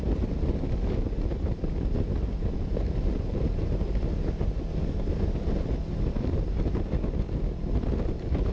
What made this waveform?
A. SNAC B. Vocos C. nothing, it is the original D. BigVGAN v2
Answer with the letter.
C